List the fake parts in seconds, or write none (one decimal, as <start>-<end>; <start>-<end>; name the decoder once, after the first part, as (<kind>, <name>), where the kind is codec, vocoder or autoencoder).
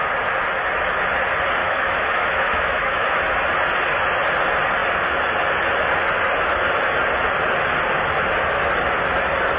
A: 1.6-3.2 (autoencoder, DAC-VAE)